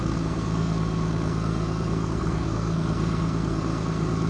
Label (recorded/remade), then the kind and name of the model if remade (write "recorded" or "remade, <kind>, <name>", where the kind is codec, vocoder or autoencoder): remade, codec, SNAC